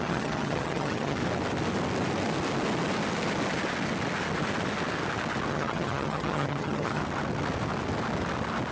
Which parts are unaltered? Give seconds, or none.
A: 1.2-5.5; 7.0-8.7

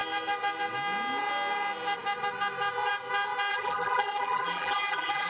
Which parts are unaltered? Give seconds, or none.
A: 0.0-3.5

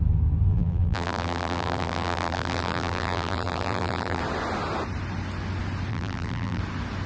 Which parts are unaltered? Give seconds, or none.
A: 0.0-0.5; 4.2-5.9; 6.6-7.1

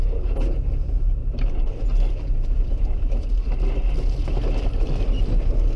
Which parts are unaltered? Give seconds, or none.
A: 0.0-1.2; 3.3-5.8